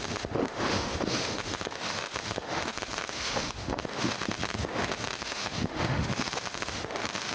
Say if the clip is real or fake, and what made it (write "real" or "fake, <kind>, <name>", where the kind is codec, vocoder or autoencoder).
fake, autoencoder, DAC-VAE